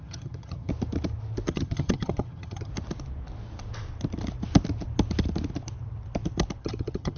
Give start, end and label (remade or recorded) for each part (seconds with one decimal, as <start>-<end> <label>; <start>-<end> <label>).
0.0-0.7 remade; 0.7-1.5 recorded; 1.5-2.7 remade; 2.7-6.6 recorded; 6.6-7.2 remade